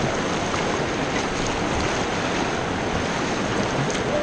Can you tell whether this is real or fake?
real